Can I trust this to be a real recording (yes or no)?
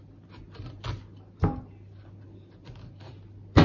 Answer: yes